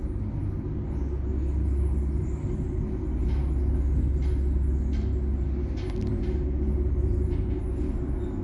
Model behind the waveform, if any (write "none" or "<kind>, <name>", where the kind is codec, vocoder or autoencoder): none